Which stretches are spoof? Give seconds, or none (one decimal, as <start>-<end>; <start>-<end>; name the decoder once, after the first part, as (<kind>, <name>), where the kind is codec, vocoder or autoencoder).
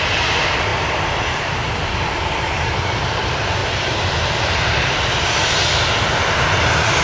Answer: 0.0-1.6 (vocoder, BigVGAN v2); 2.6-3.6; 6.6-7.0